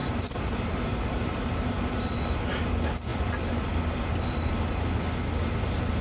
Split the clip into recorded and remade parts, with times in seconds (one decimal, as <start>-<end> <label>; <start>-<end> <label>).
0.0-0.5 remade; 0.5-0.9 recorded; 0.9-1.8 remade; 1.8-6.0 recorded